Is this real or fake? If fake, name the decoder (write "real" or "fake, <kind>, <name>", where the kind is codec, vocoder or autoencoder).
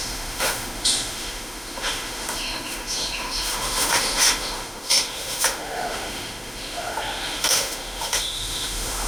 fake, autoencoder, DAC-VAE